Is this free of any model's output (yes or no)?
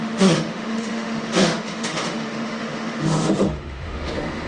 no